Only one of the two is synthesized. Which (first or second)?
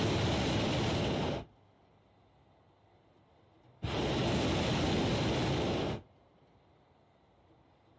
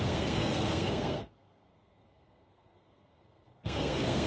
second